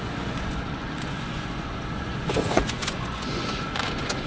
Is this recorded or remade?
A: remade